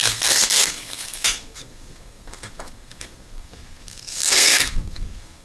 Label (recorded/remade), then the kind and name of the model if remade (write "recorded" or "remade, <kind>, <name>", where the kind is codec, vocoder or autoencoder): remade, codec, SNAC